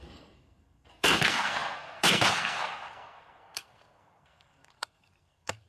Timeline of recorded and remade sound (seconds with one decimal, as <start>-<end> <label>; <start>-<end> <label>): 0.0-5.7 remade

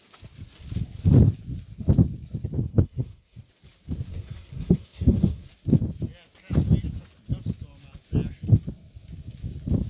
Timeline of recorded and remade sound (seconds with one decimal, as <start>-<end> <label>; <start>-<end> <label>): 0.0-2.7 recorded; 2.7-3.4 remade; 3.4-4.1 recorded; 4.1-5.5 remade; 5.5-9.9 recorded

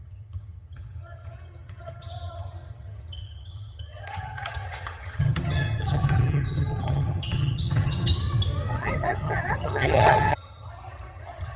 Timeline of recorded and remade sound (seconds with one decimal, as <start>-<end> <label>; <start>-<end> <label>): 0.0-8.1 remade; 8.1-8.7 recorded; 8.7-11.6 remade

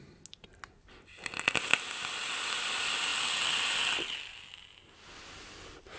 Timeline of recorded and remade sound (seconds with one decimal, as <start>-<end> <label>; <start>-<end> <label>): 0.0-6.0 recorded

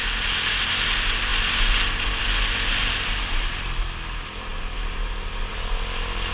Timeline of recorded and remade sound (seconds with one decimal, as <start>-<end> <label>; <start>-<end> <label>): 0.0-6.3 recorded